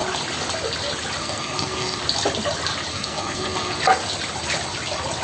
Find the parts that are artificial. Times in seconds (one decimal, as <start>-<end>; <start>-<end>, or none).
1.2-2.0; 2.9-3.8